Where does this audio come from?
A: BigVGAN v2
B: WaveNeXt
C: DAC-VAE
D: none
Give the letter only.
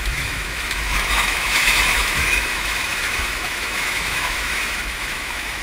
C